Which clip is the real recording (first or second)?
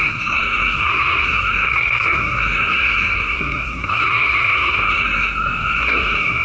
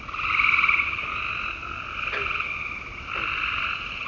second